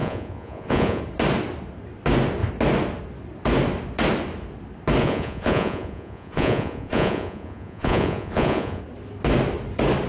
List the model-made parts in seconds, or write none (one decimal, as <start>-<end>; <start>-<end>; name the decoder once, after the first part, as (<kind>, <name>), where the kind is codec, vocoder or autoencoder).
0.0-1.0 (vocoder, Vocos); 5.0-8.8